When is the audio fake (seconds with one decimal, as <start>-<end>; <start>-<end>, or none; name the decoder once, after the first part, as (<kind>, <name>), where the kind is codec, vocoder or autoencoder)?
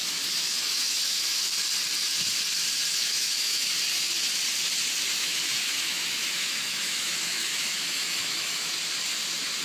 0.0-1.6 (autoencoder, DAC-VAE); 2.9-3.7; 5.1-8.7